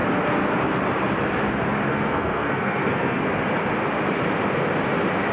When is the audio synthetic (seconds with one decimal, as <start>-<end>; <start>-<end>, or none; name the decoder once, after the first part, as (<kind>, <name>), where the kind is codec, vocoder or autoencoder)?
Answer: 1.9-3.2 (codec, SNAC)